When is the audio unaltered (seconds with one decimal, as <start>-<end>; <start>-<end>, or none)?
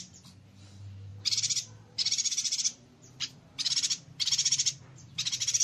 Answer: 0.0-1.1; 3.4-5.6